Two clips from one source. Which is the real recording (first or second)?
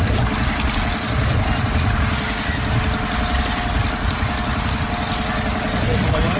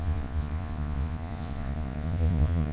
first